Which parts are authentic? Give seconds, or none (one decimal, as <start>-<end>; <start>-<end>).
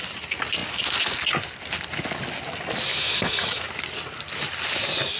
0.0-2.9; 3.7-5.2